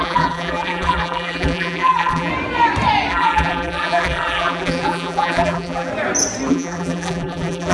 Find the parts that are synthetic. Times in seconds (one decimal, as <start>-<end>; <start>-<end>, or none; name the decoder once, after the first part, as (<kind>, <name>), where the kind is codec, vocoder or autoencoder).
0.0-2.3 (vocoder, BigVGAN v2); 3.1-5.9; 6.5-7.7